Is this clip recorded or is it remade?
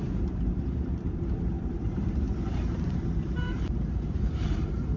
remade